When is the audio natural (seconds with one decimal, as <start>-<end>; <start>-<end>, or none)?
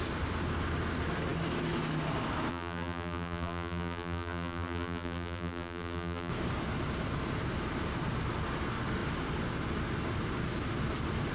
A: 0.0-2.5; 6.3-11.3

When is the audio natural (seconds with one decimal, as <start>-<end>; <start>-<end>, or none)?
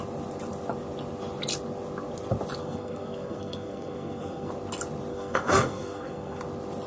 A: 0.0-2.6; 4.5-5.1; 6.4-6.9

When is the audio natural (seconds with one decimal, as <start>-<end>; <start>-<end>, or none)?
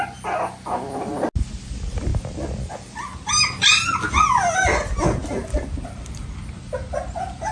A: 0.0-7.5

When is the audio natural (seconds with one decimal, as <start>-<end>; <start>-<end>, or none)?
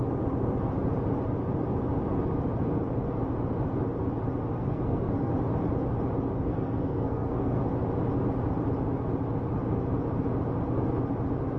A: 0.0-4.5; 5.3-6.5; 7.6-11.6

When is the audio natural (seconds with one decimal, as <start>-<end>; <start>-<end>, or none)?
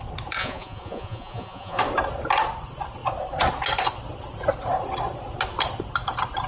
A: 0.0-0.4; 1.8-6.5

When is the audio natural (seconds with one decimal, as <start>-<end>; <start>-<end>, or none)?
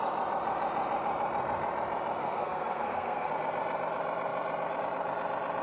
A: 0.0-2.2; 3.3-5.6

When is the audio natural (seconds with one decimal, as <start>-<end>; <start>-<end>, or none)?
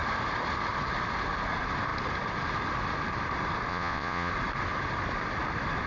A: 0.0-3.7; 4.3-5.9